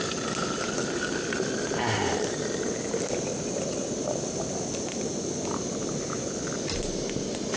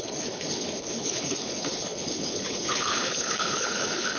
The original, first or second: first